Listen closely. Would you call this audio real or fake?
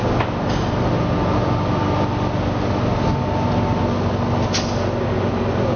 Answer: real